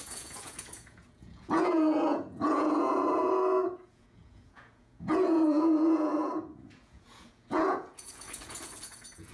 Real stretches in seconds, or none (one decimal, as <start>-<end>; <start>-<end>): none

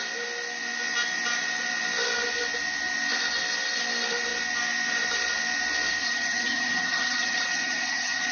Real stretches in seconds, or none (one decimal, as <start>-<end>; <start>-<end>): 0.0-6.0

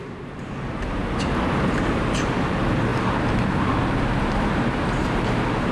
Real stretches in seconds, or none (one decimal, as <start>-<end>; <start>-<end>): 1.0-1.7; 2.9-4.3